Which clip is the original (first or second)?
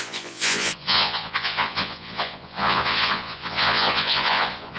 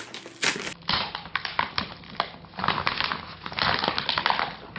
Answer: second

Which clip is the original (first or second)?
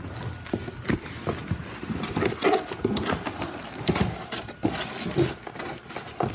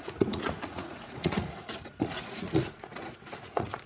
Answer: first